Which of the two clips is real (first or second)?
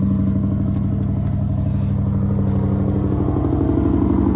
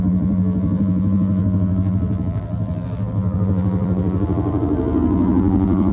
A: first